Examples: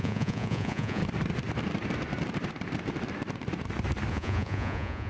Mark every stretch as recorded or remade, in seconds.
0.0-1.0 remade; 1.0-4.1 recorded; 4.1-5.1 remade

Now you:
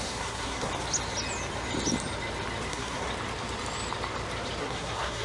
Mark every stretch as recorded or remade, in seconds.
0.0-0.7 remade; 0.7-2.7 recorded; 2.7-3.1 remade; 3.1-4.6 recorded; 4.6-5.2 remade

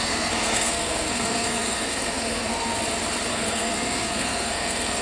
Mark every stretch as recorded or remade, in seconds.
0.0-2.7 remade; 2.7-3.3 recorded; 3.3-5.0 remade

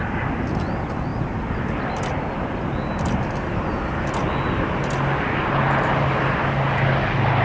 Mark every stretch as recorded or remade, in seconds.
0.0-7.4 recorded

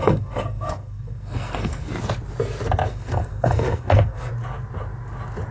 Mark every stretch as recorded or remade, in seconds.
0.0-1.9 remade; 1.9-2.9 recorded; 2.9-4.3 remade; 4.3-5.5 recorded